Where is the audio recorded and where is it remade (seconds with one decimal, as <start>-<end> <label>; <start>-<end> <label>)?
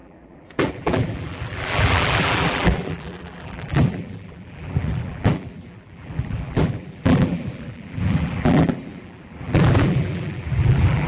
0.0-11.1 remade